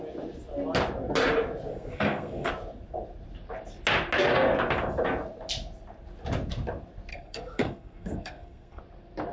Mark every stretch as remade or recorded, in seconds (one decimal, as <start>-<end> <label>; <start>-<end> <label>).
0.0-1.7 recorded; 1.7-2.5 remade; 2.5-7.1 recorded; 7.1-8.8 remade; 8.8-9.3 recorded

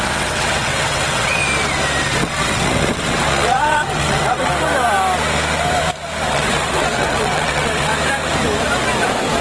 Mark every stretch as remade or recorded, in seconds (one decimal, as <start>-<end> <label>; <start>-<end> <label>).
0.0-1.4 remade; 1.4-2.1 recorded; 2.1-4.5 remade; 4.5-6.3 recorded; 6.3-7.9 remade; 7.9-9.4 recorded

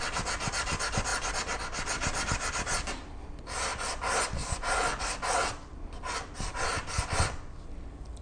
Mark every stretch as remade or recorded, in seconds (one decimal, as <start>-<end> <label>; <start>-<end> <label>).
0.0-8.2 recorded

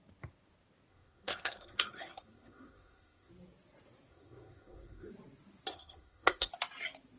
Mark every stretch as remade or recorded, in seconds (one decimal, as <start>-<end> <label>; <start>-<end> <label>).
0.0-0.9 recorded; 0.9-3.3 remade; 3.3-4.1 recorded; 4.1-5.1 remade; 5.1-5.7 recorded; 5.7-6.5 remade; 6.5-7.2 recorded

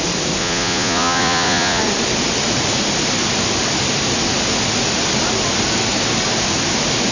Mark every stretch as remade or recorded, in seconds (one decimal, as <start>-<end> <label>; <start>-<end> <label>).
0.0-0.4 recorded; 0.4-1.8 remade; 1.8-7.1 recorded

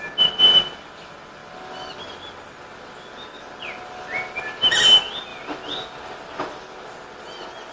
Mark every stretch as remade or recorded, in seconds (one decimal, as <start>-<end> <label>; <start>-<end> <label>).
0.0-7.7 recorded

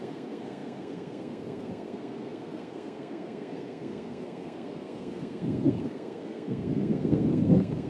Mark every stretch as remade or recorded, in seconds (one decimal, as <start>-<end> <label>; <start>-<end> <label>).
0.0-7.9 remade

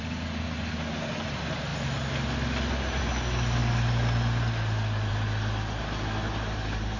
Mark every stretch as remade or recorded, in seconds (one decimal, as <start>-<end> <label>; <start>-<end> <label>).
0.0-7.0 recorded